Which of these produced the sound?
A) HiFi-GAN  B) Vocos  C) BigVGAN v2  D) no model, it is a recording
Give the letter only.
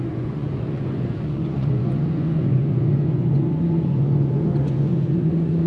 B